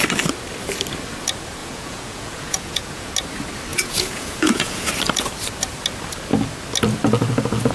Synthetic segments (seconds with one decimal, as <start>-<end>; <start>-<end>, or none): 1.6-3.1; 3.7-4.9